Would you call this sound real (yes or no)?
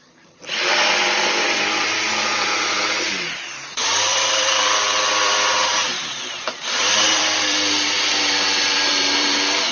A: no